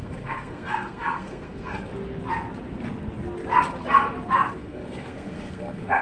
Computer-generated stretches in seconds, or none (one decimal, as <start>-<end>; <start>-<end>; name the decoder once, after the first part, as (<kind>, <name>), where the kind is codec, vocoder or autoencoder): 0.0-1.9 (codec, SNAC); 4.5-6.0